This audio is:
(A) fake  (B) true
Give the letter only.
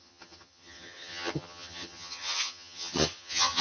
A